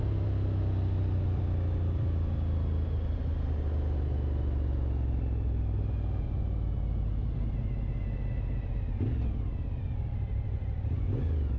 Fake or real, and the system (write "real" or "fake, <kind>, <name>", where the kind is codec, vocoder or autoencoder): real